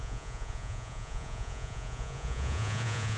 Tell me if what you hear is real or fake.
fake